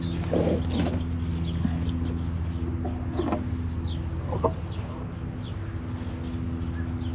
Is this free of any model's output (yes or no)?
yes